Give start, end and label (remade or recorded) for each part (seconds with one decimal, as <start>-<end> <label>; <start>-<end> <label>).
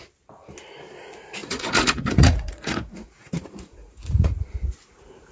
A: 0.0-1.4 recorded; 1.4-4.3 remade; 4.3-5.3 recorded